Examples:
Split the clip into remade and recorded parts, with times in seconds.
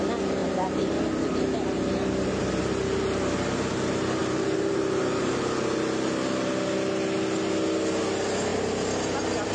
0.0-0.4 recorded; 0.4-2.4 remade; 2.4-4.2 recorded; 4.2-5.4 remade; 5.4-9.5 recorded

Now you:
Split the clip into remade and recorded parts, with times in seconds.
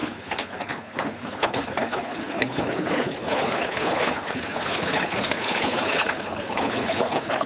0.0-7.5 remade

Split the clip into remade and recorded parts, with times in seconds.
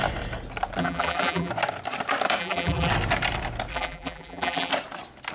0.0-0.8 recorded; 0.8-1.5 remade; 1.5-2.4 recorded; 2.4-2.9 remade; 2.9-3.7 recorded; 3.7-4.7 remade; 4.7-5.3 recorded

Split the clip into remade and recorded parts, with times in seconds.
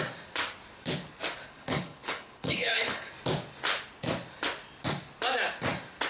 0.0-1.5 recorded; 1.5-3.1 remade; 3.1-6.1 recorded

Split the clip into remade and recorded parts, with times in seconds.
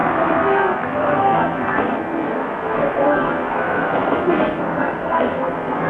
0.0-5.9 remade